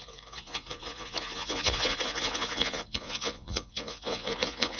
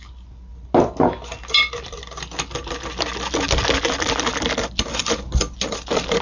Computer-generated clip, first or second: first